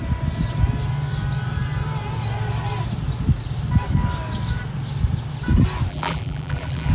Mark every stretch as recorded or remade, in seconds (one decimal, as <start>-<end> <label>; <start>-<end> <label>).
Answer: 0.0-5.9 recorded; 5.9-6.9 remade